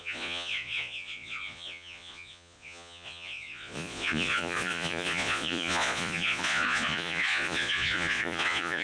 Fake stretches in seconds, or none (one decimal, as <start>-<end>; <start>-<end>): 0.0-8.8